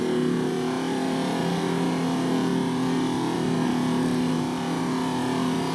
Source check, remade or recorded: recorded